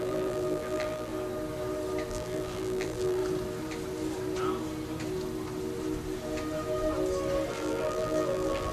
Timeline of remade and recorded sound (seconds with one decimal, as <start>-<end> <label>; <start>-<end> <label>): 0.0-1.1 remade; 1.1-2.1 recorded; 2.1-3.2 remade; 3.2-7.5 recorded; 7.5-8.7 remade